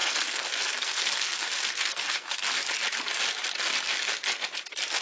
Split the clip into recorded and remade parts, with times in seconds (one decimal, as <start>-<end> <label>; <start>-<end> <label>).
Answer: 0.0-2.6 remade; 2.6-5.0 recorded